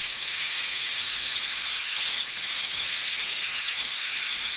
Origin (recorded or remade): remade